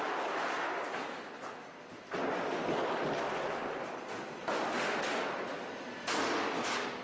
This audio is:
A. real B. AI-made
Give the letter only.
A